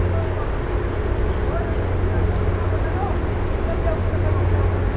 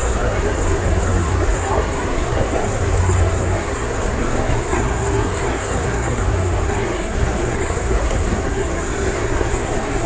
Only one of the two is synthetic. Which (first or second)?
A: second